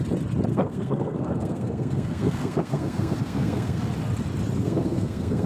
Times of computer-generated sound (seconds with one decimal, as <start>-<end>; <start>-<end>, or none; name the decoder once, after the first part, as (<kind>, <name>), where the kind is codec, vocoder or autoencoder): 0.5-3.8 (codec, SNAC); 4.6-5.5